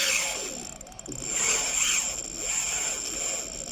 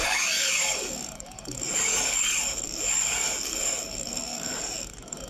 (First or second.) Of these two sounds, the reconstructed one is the second